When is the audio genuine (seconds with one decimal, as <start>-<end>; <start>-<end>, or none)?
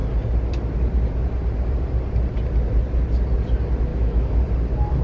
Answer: 0.0-3.9; 4.4-5.0